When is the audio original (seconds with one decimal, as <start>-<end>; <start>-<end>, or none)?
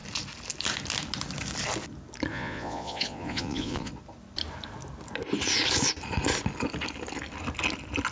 0.0-2.3; 3.9-8.1